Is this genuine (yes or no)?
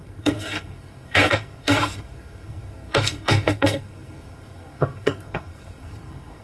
no